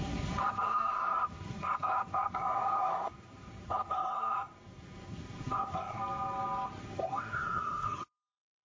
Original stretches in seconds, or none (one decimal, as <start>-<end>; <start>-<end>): 6.0-6.8